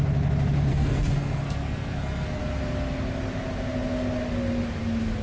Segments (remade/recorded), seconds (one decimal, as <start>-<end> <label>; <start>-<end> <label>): 0.0-0.7 recorded; 0.7-2.4 remade; 2.4-5.2 recorded